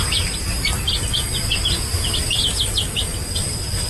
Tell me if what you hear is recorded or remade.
recorded